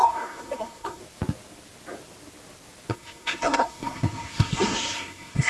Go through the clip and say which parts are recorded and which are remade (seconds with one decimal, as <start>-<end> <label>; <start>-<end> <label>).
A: 0.0-1.0 remade; 1.0-2.9 recorded; 2.9-5.5 remade